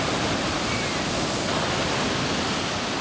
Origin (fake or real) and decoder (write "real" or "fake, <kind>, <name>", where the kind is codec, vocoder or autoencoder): real